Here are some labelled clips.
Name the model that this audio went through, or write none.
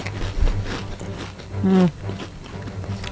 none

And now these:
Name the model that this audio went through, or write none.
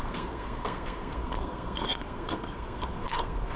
codec, SNAC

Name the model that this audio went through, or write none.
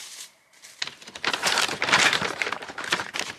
vocoder, BigVGAN v2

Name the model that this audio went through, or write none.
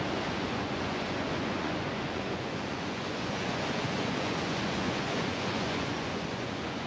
vocoder, Vocos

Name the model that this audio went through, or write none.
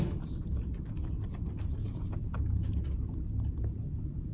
none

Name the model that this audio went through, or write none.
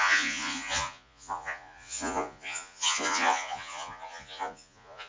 vocoder, Vocos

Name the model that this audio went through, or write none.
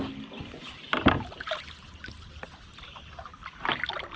none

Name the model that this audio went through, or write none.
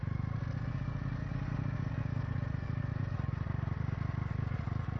none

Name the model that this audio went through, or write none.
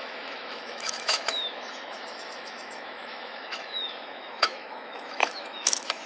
autoencoder, DAC-VAE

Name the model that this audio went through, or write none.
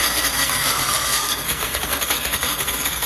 codec, SNAC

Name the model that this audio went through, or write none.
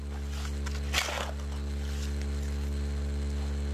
none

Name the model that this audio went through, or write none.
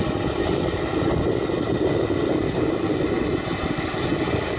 none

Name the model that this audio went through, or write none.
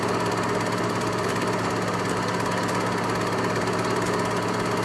none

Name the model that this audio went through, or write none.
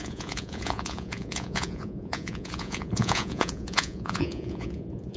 vocoder, Vocos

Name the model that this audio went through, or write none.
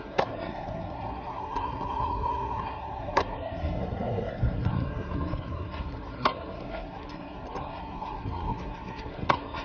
codec, SNAC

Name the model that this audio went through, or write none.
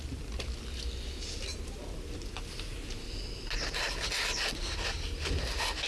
none